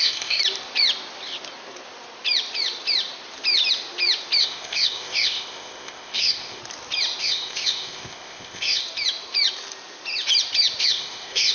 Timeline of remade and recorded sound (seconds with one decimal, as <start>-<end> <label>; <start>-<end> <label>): 0.0-0.4 remade; 0.4-4.4 recorded; 4.4-6.6 remade; 6.6-7.2 recorded; 7.2-8.8 remade; 8.8-10.8 recorded; 10.8-11.5 remade